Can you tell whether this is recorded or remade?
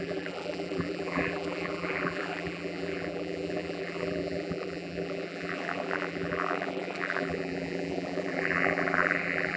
remade